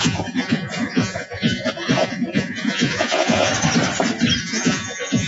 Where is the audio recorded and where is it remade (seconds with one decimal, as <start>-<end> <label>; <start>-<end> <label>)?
0.0-3.5 remade; 3.5-4.4 recorded; 4.4-5.3 remade